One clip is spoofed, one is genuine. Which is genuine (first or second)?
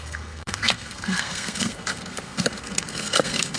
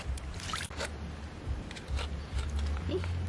second